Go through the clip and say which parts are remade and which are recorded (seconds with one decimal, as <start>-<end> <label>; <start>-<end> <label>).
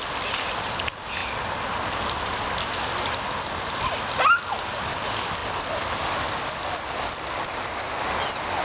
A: 0.0-8.6 recorded